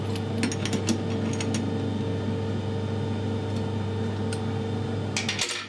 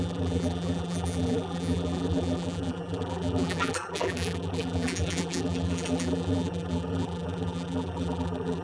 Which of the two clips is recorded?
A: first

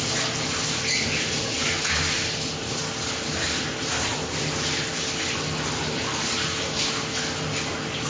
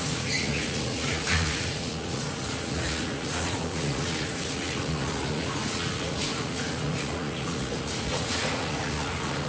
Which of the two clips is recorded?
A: first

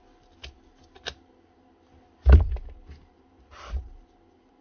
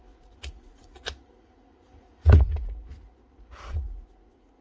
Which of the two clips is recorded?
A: first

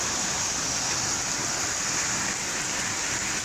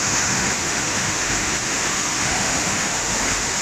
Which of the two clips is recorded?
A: first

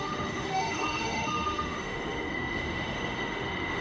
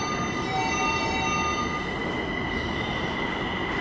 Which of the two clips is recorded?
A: second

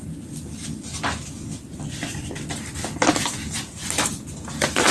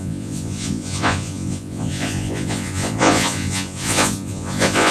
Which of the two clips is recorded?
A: first